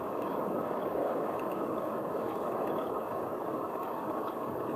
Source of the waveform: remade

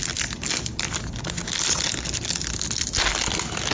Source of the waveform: recorded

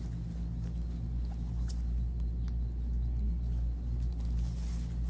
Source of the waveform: recorded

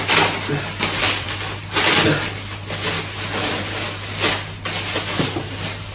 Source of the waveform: recorded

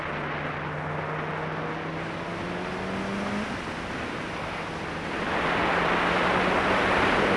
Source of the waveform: recorded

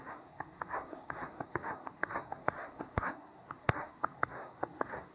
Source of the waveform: remade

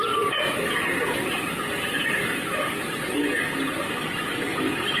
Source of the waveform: recorded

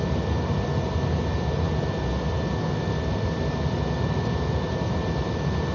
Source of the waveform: recorded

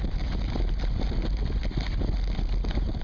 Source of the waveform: recorded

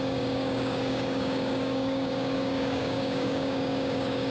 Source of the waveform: remade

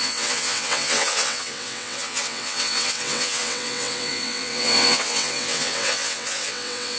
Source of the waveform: remade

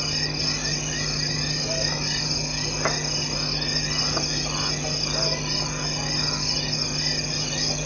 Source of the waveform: recorded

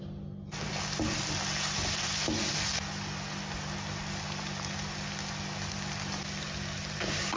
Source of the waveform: recorded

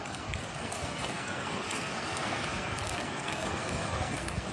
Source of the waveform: remade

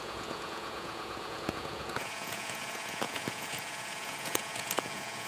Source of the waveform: remade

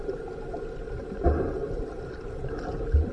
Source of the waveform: recorded